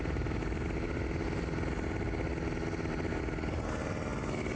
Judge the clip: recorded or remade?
recorded